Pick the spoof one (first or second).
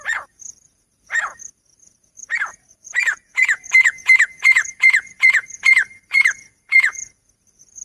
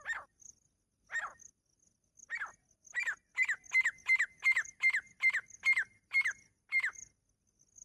first